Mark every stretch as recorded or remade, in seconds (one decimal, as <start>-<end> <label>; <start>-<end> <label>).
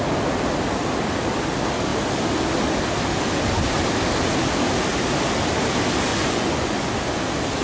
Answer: 0.0-6.1 recorded; 6.1-6.9 remade; 6.9-7.6 recorded